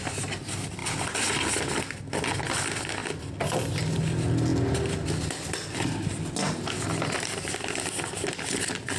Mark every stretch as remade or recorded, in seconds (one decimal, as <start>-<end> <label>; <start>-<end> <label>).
0.0-9.0 recorded